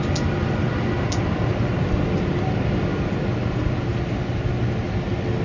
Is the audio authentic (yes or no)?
yes